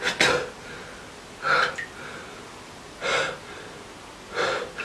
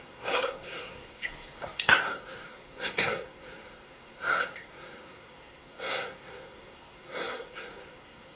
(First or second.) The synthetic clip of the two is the second